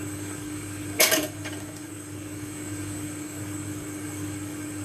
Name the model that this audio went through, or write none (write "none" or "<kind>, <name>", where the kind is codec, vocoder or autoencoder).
codec, DAC